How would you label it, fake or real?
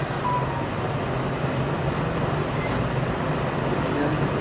real